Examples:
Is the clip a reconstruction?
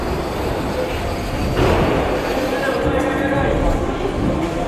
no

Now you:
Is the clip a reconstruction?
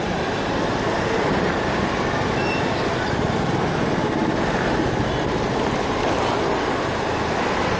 no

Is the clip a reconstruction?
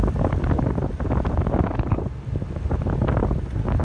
no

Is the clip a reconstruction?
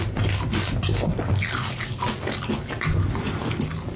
no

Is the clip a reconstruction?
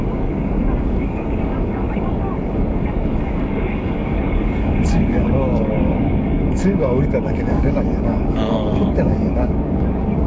yes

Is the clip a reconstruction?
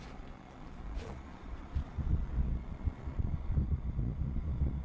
yes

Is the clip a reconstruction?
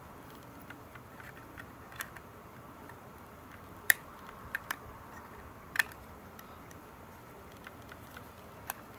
yes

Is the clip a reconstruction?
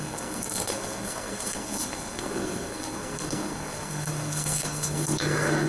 yes